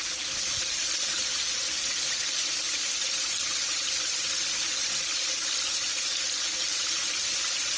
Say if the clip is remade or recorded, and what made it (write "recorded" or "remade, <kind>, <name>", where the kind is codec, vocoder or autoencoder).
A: recorded